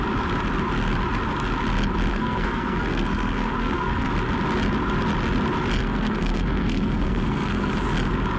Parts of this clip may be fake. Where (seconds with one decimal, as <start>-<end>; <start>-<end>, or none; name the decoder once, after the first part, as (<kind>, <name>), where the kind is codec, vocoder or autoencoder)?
2.1-4.1 (codec, SNAC); 5.8-7.7